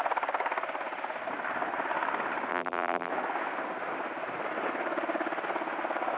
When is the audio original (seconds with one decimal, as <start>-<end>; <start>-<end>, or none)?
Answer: 0.0-2.5; 3.1-6.2